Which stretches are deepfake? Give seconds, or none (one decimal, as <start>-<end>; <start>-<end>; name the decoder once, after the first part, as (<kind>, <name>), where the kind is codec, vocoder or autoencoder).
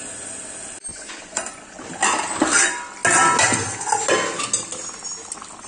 0.9-1.7 (vocoder, Vocos)